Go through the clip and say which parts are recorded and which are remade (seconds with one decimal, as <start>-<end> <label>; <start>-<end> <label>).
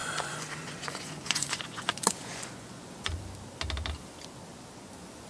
0.0-3.2 remade; 3.2-4.5 recorded; 4.5-5.3 remade